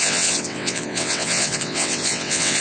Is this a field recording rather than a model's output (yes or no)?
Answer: no